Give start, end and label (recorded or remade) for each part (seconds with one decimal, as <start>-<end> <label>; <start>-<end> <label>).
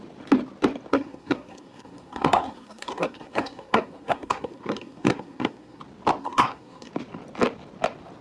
0.0-0.9 recorded; 0.9-5.8 remade; 5.8-6.2 recorded; 6.2-6.9 remade; 6.9-8.2 recorded